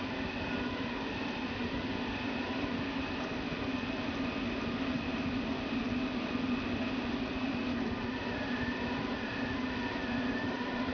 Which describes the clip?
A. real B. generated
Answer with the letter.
A